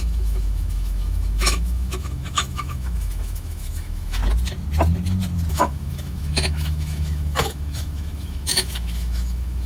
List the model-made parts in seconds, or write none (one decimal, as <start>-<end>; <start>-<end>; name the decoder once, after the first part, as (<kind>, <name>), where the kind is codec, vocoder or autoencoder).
0.0-4.2 (autoencoder, DAC-VAE); 5.5-9.7